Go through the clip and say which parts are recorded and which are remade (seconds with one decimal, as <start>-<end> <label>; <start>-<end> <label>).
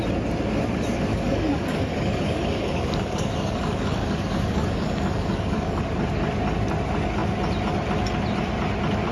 0.0-1.1 recorded; 1.1-5.8 remade; 5.8-9.1 recorded